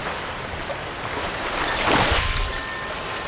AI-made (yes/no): no